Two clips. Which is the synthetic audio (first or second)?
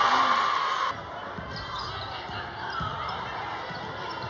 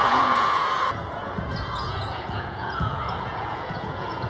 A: second